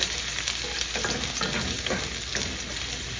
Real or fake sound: real